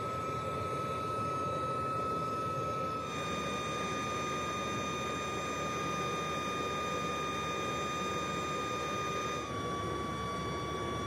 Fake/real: real